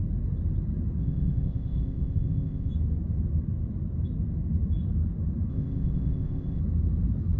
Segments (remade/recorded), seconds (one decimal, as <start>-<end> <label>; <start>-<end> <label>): 0.0-1.0 recorded; 1.0-2.7 remade; 2.7-5.5 recorded; 5.5-6.6 remade; 6.6-7.4 recorded